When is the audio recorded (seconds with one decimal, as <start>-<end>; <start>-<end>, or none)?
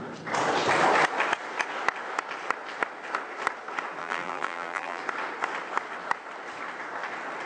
0.0-4.0; 5.0-7.5